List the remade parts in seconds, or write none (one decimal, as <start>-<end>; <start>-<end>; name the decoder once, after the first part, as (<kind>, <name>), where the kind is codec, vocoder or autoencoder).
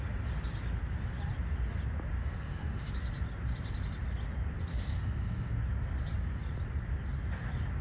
2.2-2.9 (autoencoder, DAC-VAE); 4.7-5.5